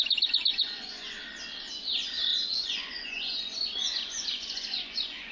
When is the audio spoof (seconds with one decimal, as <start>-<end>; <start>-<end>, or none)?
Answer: 0.5-1.2; 2.3-5.3